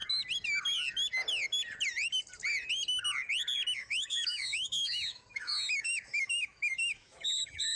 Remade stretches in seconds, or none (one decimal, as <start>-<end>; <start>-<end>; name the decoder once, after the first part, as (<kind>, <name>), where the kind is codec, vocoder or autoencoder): 3.8-7.8 (autoencoder, DAC-VAE)